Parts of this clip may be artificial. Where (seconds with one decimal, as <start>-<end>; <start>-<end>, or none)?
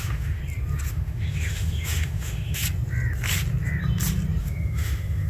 0.0-0.4; 0.9-2.6; 4.4-5.3